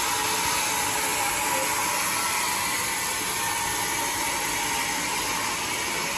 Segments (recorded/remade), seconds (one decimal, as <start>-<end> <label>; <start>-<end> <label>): 0.0-6.2 recorded